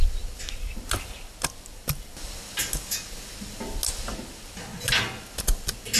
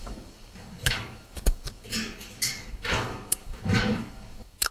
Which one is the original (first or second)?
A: first